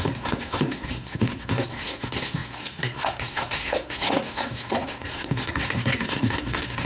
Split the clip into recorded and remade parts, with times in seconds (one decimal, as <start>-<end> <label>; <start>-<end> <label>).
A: 0.0-6.9 remade